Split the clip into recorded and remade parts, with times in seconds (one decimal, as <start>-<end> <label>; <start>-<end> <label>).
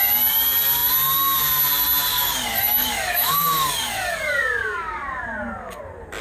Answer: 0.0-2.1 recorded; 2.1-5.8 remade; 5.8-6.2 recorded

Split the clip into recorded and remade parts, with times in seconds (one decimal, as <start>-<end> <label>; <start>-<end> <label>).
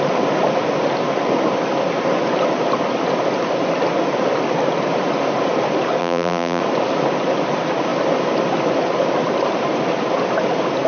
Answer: 0.0-6.0 recorded; 6.0-6.6 remade; 6.6-10.9 recorded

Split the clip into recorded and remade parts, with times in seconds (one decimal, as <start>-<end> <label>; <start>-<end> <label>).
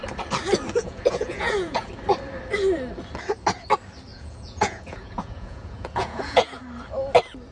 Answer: 0.0-0.8 recorded; 0.8-1.9 remade; 1.9-4.1 recorded; 4.1-6.6 remade; 6.6-7.5 recorded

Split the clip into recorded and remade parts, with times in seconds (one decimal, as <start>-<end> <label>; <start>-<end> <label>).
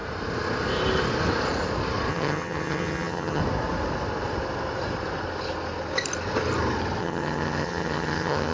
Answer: 0.0-2.1 recorded; 2.1-3.4 remade; 3.4-7.0 recorded; 7.0-8.5 remade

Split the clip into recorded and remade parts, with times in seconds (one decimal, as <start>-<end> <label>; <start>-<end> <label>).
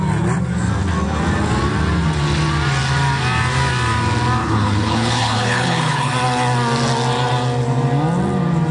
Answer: 0.0-4.4 recorded; 4.4-6.1 remade; 6.1-8.7 recorded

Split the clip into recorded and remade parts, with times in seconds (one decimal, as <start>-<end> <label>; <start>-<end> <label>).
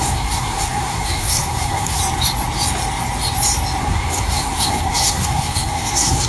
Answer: 0.0-2.0 remade; 2.0-3.8 recorded; 3.8-6.3 remade